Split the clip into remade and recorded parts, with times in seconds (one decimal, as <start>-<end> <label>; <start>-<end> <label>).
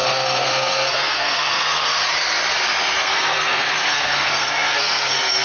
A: 0.0-2.0 remade; 2.0-3.0 recorded; 3.0-5.4 remade